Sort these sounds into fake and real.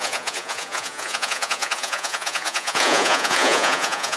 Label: fake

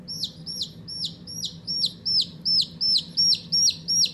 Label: real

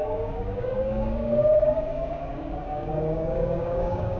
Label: fake